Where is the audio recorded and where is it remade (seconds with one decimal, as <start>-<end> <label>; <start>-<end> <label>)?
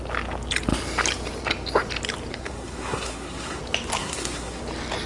0.0-2.3 recorded; 2.3-3.6 remade; 3.6-4.0 recorded; 4.0-4.6 remade; 4.6-5.1 recorded